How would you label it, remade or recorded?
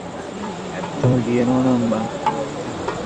remade